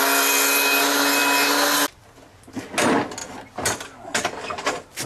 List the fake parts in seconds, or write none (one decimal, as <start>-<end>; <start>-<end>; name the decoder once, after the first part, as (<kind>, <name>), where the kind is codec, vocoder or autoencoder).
none